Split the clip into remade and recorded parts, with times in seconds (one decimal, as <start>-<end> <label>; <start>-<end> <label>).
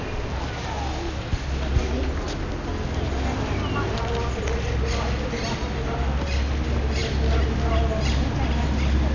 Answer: 0.0-9.1 recorded